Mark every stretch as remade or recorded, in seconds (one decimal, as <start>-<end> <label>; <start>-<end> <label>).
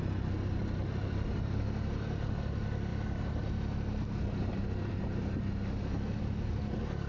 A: 0.0-0.8 recorded; 0.8-1.6 remade; 1.6-7.1 recorded